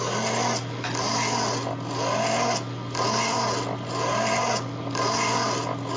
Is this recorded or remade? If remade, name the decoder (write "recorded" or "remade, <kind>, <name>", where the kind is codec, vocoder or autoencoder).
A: recorded